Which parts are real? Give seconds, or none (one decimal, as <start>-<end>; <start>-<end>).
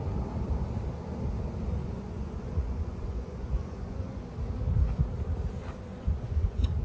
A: 0.0-1.8; 4.2-5.9